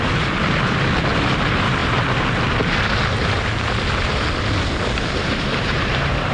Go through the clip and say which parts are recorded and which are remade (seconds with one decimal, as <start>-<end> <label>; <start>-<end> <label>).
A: 0.0-5.2 recorded; 5.2-6.3 remade